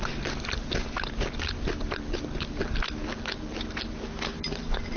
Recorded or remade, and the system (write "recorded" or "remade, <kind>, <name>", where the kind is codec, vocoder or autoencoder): recorded